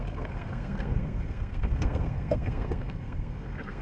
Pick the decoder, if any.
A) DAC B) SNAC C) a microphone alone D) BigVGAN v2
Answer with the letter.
B